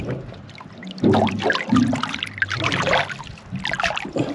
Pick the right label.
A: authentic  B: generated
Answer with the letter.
A